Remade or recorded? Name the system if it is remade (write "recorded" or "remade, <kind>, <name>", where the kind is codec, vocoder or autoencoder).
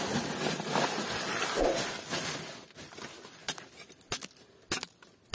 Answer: recorded